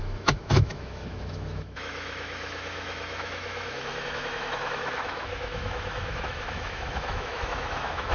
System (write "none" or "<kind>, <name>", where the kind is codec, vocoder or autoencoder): autoencoder, DAC-VAE